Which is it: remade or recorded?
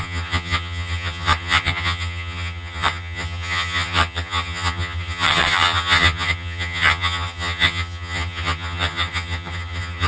remade